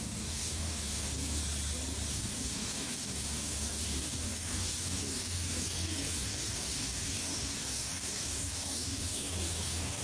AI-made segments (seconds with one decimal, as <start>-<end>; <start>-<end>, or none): 0.0-1.4; 2.1-10.0